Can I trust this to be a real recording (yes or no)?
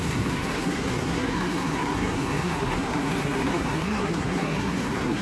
no